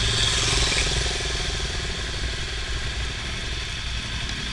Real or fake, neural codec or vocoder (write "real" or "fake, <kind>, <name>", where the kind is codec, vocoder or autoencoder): real